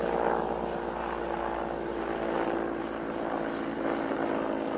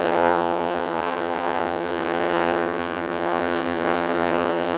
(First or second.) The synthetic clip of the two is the second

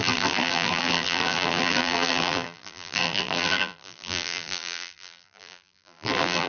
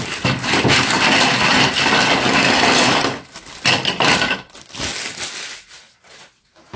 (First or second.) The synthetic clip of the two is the first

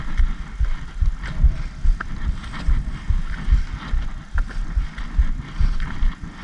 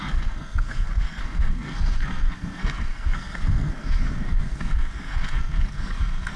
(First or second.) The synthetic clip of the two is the second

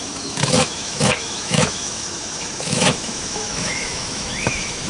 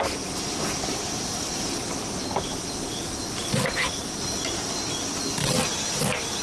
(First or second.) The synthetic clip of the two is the first